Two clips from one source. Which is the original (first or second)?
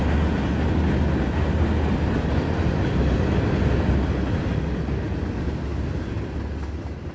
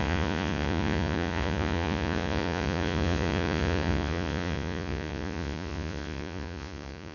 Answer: first